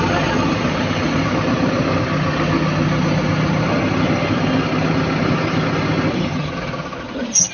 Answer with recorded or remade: recorded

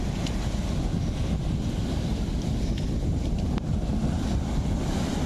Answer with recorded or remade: recorded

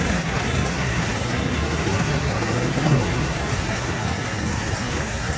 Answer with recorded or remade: remade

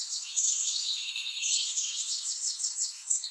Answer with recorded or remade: remade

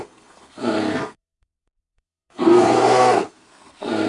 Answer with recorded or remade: remade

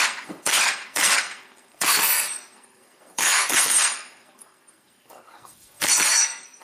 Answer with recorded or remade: remade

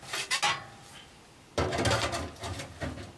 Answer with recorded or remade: recorded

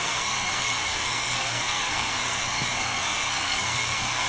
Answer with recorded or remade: remade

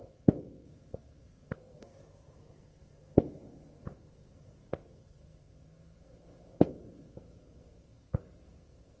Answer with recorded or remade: remade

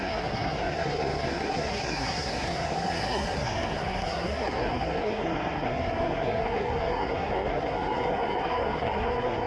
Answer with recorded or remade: remade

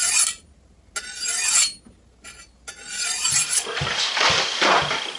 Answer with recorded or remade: recorded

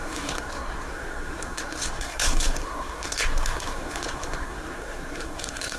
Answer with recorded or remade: remade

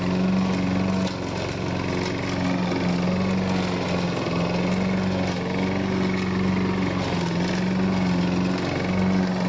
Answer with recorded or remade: recorded